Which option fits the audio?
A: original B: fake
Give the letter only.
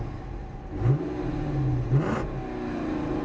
A